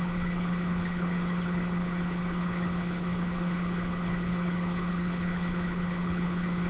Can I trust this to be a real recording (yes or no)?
no